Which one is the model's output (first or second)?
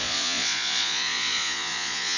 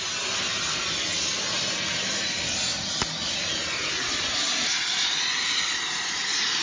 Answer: first